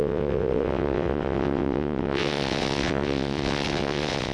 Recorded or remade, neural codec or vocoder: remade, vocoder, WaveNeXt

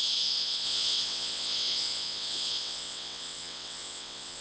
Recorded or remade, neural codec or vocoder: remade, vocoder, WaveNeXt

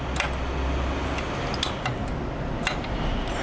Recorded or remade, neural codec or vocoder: recorded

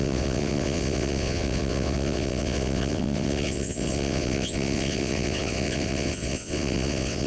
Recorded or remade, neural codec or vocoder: remade, vocoder, WaveNeXt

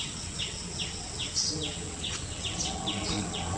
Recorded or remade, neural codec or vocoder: remade, vocoder, WaveNeXt